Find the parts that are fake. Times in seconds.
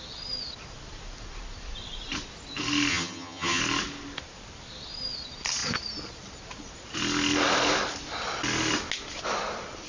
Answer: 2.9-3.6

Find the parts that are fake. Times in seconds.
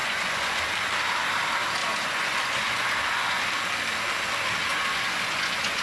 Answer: 0.0-0.7; 1.8-3.5; 4.7-5.8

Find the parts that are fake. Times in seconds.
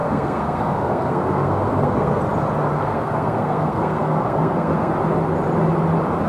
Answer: 0.0-2.2; 2.8-4.9